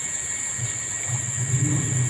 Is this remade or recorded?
recorded